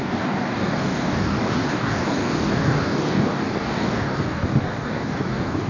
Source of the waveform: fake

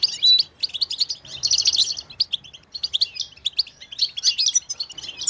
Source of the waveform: real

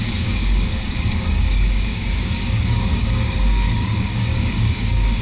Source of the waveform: fake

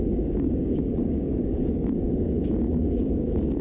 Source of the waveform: fake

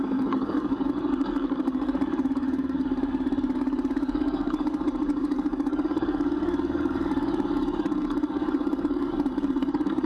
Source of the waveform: fake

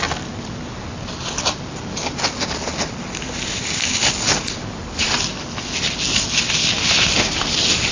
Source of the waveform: real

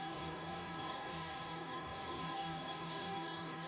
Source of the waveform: fake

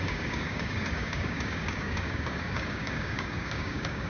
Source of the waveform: fake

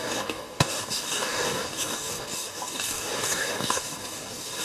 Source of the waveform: fake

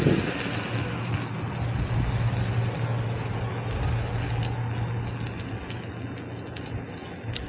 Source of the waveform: real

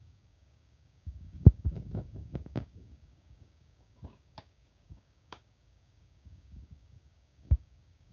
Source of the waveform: fake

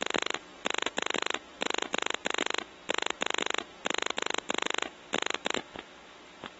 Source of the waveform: real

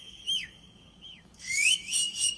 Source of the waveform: fake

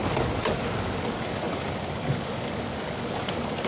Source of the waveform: fake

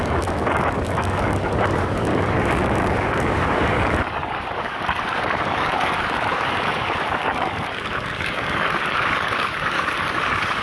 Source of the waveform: fake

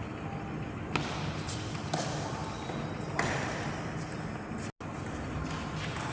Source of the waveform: real